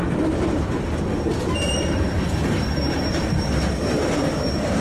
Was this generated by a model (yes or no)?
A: yes